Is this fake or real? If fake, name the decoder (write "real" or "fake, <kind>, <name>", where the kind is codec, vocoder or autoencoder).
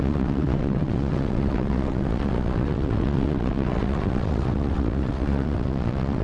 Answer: fake, vocoder, WaveNeXt